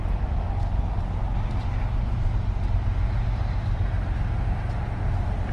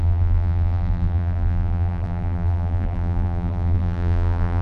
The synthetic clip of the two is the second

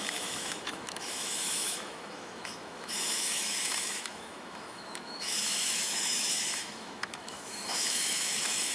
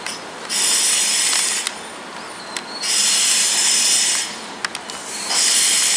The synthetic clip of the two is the first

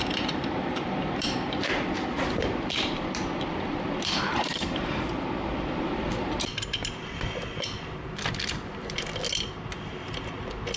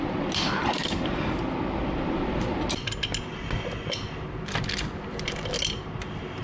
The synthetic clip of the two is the first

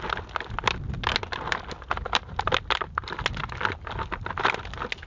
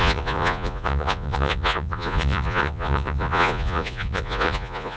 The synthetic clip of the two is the second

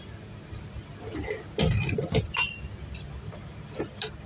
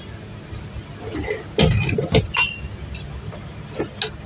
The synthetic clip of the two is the first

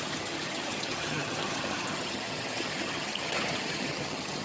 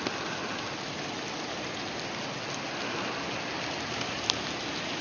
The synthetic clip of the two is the first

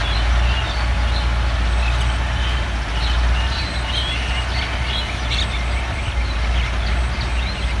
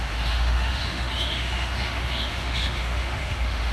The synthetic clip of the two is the second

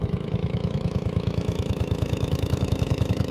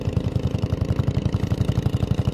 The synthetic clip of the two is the first